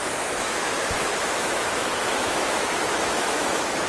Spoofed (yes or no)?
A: yes